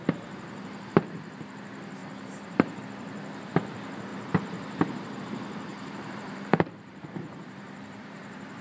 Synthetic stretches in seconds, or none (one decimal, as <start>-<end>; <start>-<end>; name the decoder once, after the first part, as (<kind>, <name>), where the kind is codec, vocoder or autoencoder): 2.0-2.8 (vocoder, BigVGAN v2); 4.1-5.2; 5.7-8.6